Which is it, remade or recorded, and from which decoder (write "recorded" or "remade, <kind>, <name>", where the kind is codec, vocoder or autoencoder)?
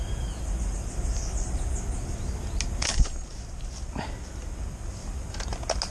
recorded